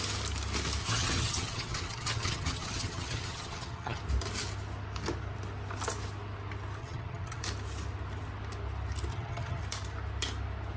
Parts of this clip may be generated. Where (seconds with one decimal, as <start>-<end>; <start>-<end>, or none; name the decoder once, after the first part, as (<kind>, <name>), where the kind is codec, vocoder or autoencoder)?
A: 0.8-4.0 (vocoder, HiFi-GAN); 6.8-7.4; 9.1-9.6